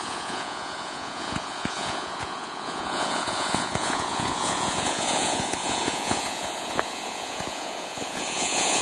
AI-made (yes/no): yes